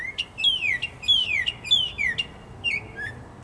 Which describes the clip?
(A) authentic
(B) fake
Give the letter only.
A